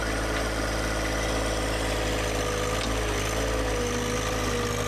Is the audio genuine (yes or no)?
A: yes